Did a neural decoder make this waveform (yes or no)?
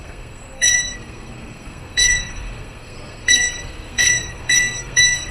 yes